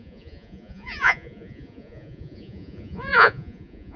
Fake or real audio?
fake